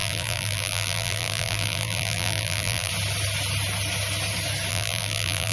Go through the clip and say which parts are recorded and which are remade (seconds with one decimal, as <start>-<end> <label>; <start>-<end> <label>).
0.0-2.9 remade; 2.9-4.7 recorded; 4.7-5.5 remade